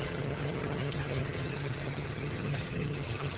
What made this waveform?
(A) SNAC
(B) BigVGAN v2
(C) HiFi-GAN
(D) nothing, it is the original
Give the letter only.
C